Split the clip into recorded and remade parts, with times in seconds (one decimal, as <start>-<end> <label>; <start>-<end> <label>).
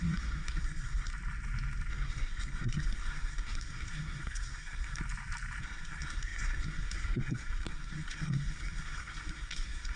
0.0-1.1 remade; 1.1-1.9 recorded; 1.9-5.0 remade; 5.0-5.6 recorded; 5.6-10.0 remade